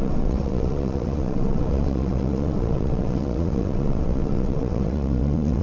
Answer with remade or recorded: remade